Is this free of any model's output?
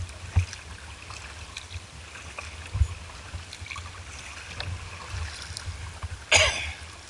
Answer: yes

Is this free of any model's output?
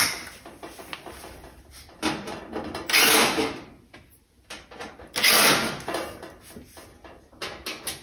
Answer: yes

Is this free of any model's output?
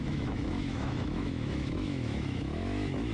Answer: no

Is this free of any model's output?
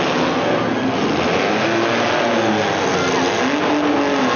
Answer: yes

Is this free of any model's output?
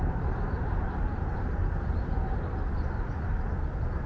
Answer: yes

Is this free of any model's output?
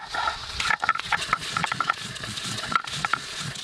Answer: no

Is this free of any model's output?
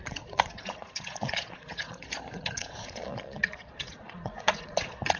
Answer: no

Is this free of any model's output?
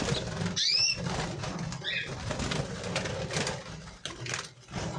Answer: yes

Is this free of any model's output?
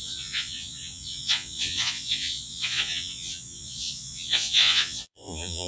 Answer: no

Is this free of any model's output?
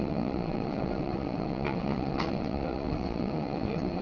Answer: no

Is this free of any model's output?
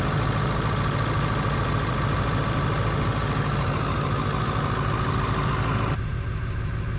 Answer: yes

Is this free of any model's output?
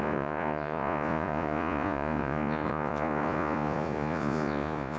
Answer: no